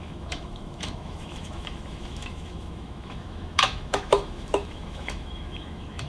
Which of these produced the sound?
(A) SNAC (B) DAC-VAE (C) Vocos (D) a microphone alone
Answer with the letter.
B